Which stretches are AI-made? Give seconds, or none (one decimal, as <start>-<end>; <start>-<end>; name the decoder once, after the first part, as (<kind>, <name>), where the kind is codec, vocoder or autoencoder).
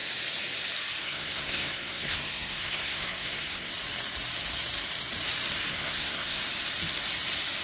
1.0-3.7 (codec, SNAC); 5.7-6.4